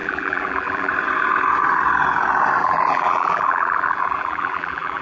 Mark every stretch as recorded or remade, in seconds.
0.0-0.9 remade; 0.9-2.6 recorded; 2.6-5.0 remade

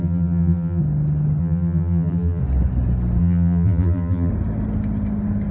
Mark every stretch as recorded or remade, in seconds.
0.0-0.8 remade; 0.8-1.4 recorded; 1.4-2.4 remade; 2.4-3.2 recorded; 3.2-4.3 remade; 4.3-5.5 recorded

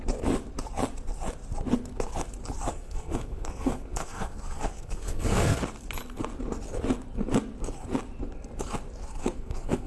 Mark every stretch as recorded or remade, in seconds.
0.0-2.7 recorded; 2.7-5.6 remade; 5.6-9.2 recorded; 9.2-9.9 remade